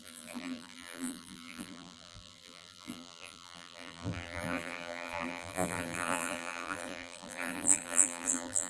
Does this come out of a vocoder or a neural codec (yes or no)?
yes